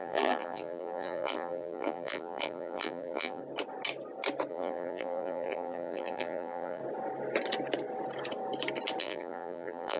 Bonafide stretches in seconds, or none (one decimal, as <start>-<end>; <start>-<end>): 3.4-4.5; 6.8-9.0